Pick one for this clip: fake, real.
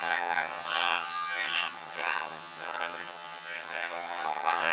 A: fake